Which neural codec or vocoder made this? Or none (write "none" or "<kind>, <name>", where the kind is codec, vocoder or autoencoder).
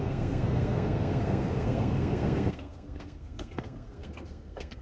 codec, SNAC